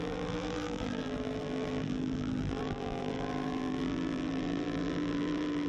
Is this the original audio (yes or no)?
no